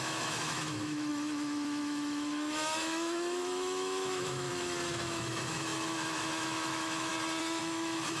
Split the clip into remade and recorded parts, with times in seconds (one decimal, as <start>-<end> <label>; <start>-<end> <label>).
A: 0.0-7.1 remade; 7.1-7.6 recorded; 7.6-8.2 remade